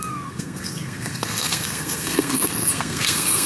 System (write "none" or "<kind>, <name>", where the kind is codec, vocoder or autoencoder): codec, SNAC